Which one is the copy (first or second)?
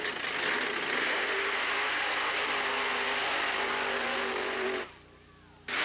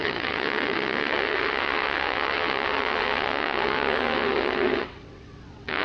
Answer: second